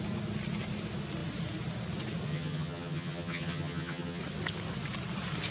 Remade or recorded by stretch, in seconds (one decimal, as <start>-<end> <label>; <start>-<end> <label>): 0.0-2.3 recorded; 2.3-4.2 remade; 4.2-5.5 recorded

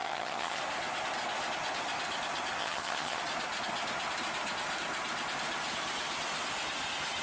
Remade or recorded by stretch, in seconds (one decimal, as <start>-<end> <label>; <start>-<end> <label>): 0.0-0.6 remade; 0.6-2.6 recorded; 2.6-3.2 remade; 3.2-7.2 recorded

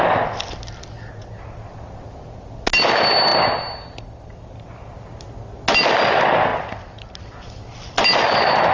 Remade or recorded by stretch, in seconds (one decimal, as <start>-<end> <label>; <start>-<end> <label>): 0.0-8.7 recorded

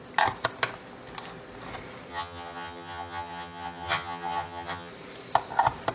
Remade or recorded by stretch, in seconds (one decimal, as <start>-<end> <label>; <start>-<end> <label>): 0.0-2.1 recorded; 2.1-4.9 remade; 4.9-5.9 recorded

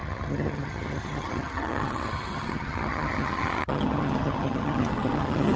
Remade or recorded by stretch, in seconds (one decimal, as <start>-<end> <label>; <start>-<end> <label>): 0.0-5.6 remade

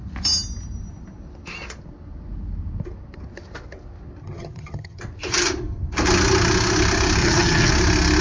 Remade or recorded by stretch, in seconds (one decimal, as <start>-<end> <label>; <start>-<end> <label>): 0.0-4.2 recorded; 4.2-5.0 remade; 5.0-7.2 recorded; 7.2-7.7 remade; 7.7-8.2 recorded